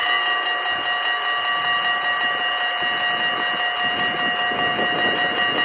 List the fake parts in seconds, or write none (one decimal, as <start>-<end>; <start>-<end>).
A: none